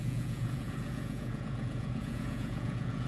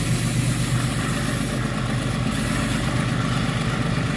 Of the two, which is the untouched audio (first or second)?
second